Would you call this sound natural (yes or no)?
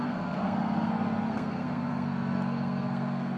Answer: no